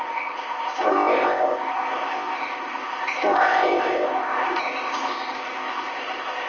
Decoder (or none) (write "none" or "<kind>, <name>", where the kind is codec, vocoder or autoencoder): codec, ZipCodec